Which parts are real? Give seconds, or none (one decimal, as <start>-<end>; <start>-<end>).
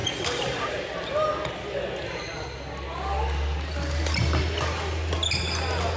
0.0-6.0